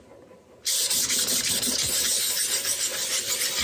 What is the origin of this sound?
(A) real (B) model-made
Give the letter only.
A